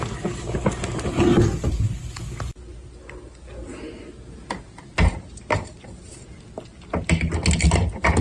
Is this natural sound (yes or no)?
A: yes